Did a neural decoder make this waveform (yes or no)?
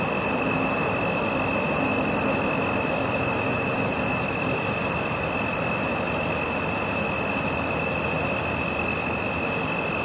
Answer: no